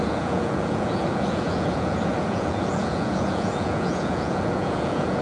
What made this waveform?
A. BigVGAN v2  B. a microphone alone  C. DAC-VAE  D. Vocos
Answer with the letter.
D